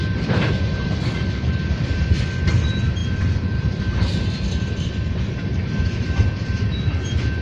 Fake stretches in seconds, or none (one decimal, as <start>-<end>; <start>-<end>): 3.0-3.8